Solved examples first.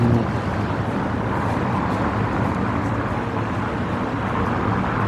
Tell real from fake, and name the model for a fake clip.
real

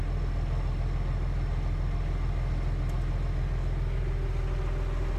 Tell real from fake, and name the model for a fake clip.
real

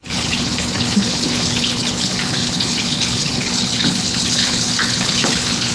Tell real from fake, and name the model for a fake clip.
fake, codec, HILCodec